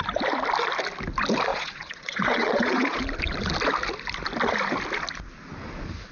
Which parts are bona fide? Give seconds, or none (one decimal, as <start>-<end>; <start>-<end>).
0.0-1.5; 3.0-6.1